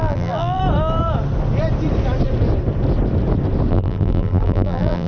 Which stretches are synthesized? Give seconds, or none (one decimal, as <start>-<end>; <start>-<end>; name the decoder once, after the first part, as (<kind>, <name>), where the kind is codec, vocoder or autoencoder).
0.0-0.6 (vocoder, BigVGAN v2); 3.7-5.1